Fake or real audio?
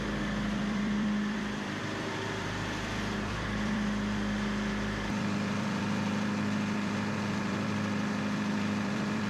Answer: fake